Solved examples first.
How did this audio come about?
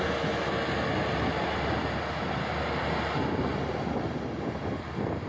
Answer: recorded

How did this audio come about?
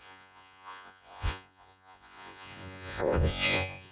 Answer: remade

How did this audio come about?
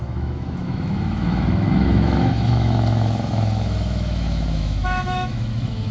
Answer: remade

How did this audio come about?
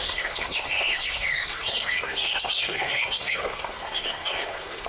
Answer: remade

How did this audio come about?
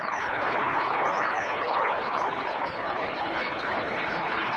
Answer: remade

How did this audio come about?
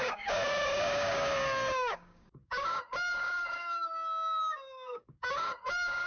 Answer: remade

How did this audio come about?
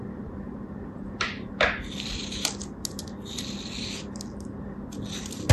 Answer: recorded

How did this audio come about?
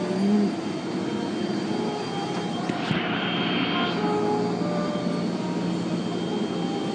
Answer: recorded